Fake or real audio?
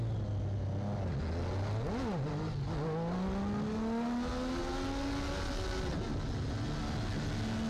real